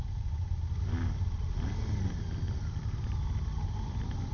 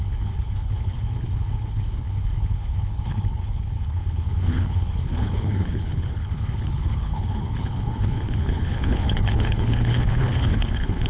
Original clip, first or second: first